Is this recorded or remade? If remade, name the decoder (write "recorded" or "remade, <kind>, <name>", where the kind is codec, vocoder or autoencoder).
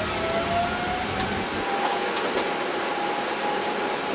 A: recorded